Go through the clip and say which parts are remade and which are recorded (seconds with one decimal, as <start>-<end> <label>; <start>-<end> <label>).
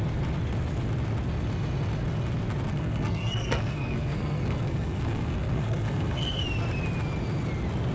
0.0-2.7 recorded; 2.7-6.4 remade; 6.4-7.9 recorded